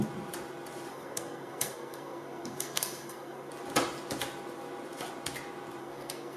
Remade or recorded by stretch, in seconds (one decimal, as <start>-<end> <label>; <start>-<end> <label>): 0.0-0.9 recorded; 0.9-3.5 remade; 3.5-5.8 recorded; 5.8-6.4 remade